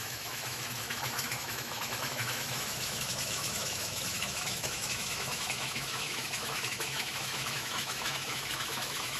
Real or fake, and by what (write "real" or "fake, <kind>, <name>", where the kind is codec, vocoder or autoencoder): fake, autoencoder, DAC-VAE